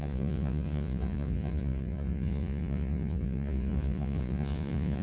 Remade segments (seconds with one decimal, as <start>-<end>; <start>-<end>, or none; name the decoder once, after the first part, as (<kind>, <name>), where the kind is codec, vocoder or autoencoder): 0.0-5.0 (vocoder, Vocos)